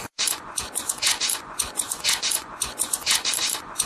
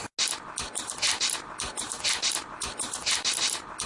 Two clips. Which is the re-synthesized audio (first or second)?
first